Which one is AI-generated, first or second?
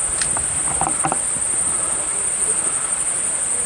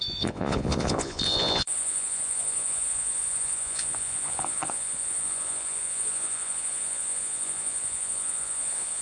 second